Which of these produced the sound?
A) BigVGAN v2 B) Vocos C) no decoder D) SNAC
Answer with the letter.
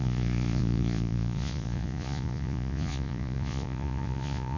B